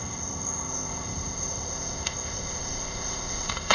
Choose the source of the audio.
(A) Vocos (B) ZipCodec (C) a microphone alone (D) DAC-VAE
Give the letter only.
B